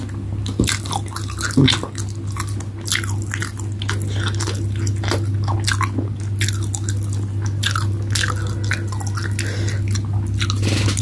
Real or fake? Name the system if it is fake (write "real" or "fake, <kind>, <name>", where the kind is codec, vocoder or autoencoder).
real